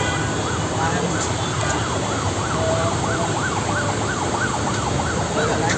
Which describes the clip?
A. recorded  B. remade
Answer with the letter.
A